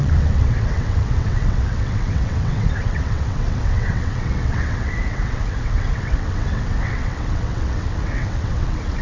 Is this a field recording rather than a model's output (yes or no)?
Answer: no